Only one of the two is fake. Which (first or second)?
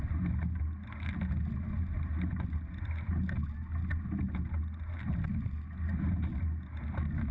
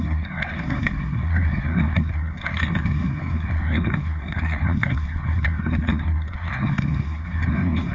second